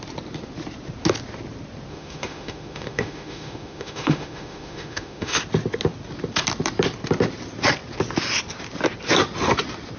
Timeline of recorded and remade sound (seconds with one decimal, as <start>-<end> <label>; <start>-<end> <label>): 0.0-1.9 recorded; 1.9-5.4 remade; 5.4-10.0 recorded